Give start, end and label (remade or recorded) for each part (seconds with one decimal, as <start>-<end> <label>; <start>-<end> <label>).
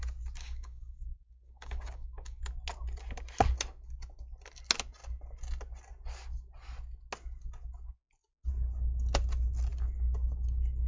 0.0-0.4 recorded; 0.4-2.4 remade; 2.4-10.9 recorded